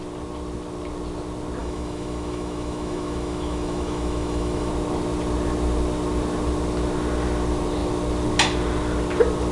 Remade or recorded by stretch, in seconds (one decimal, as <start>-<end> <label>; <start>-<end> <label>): 0.0-1.6 recorded; 1.6-4.7 remade; 4.7-9.5 recorded